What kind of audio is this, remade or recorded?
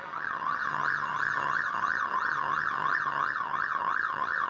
remade